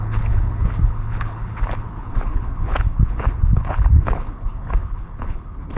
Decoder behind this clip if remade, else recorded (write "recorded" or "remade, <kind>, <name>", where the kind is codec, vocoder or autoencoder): remade, codec, HILCodec